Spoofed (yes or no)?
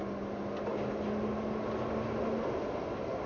no